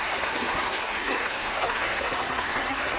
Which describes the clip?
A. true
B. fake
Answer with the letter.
B